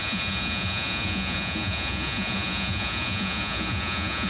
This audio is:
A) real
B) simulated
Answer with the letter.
B